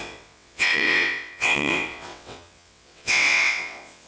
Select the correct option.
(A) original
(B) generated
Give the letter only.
B